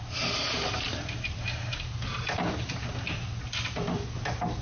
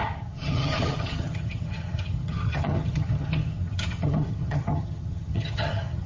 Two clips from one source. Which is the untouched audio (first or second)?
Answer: first